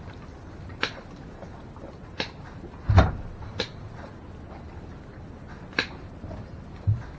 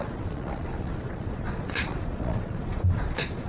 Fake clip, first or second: second